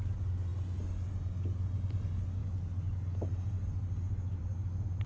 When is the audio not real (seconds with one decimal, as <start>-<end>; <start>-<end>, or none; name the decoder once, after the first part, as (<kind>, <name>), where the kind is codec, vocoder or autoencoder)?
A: none